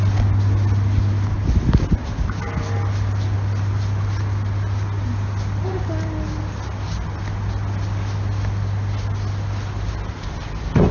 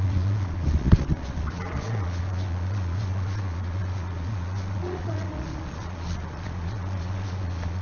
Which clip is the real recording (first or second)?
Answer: first